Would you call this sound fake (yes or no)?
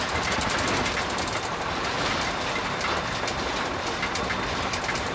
no